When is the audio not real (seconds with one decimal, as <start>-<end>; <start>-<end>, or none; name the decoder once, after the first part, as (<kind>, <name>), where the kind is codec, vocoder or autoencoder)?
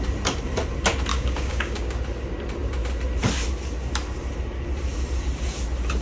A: 1.1-2.0 (codec, DAC)